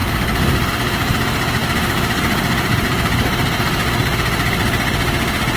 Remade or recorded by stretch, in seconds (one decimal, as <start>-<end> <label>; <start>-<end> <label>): 0.0-0.7 remade; 0.7-1.6 recorded; 1.6-4.0 remade; 4.0-5.6 recorded